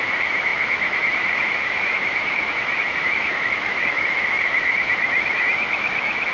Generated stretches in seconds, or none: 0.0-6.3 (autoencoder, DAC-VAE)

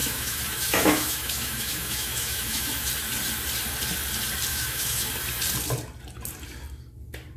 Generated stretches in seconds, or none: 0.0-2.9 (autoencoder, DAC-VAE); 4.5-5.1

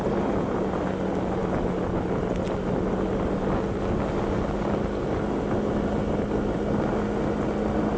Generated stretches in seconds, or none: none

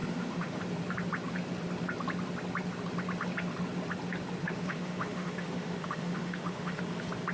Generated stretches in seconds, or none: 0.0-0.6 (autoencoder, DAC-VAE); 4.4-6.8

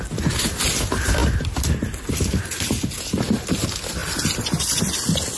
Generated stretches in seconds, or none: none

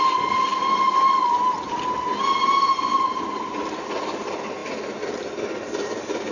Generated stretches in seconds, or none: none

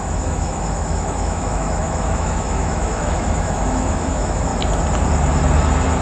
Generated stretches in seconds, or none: 0.0-4.5 (autoencoder, DAC-VAE)